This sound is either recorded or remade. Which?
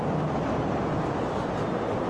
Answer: recorded